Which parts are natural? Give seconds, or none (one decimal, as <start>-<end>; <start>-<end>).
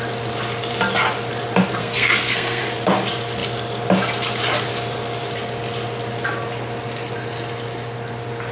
0.0-1.8; 2.6-8.5